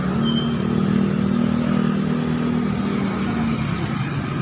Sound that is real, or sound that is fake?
real